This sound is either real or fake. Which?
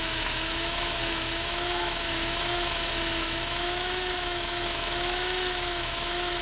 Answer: fake